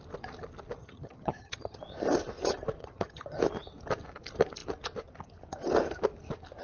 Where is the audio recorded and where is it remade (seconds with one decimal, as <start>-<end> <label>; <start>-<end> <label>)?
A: 0.0-0.8 recorded; 0.8-1.8 remade; 1.8-2.8 recorded; 2.8-3.4 remade; 3.4-6.6 recorded